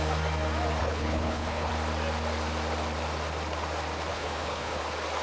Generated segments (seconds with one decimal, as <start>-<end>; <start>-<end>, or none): 0.8-1.7; 4.1-4.8